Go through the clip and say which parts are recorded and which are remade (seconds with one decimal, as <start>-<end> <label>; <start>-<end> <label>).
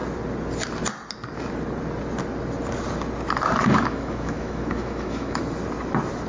0.0-3.6 recorded; 3.6-5.4 remade; 5.4-6.3 recorded